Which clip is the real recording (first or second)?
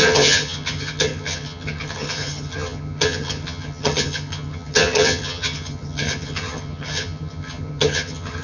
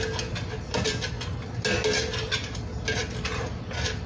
second